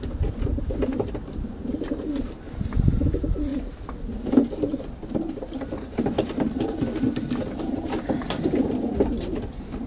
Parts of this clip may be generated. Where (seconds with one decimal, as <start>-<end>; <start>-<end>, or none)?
none